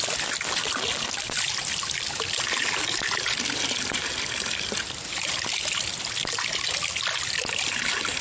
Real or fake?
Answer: real